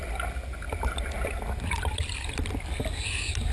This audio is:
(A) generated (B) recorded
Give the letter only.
B